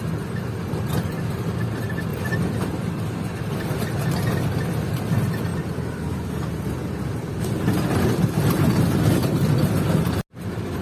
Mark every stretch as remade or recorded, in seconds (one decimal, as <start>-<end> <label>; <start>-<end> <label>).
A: 0.0-2.1 recorded; 2.1-3.4 remade; 3.4-10.8 recorded